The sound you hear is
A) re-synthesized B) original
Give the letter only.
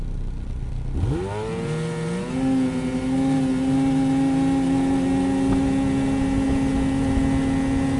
B